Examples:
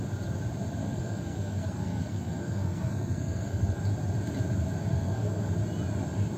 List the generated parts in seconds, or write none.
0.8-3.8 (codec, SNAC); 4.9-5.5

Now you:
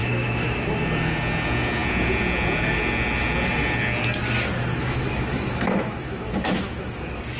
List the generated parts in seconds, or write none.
0.0-0.8 (autoencoder, DAC-VAE); 4.7-7.0

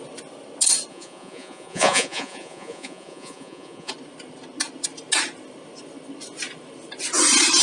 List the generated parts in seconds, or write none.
0.9-3.9 (vocoder, Vocos)

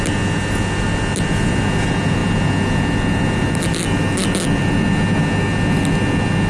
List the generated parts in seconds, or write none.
none

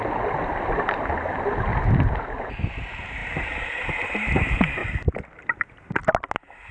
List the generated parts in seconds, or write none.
3.2-3.9 (vocoder, BigVGAN v2); 4.8-6.1

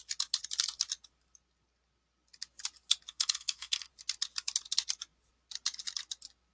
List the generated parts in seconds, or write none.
3.1-3.9 (codec, SNAC)